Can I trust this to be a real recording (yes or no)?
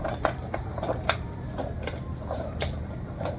no